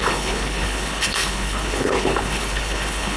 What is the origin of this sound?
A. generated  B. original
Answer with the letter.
A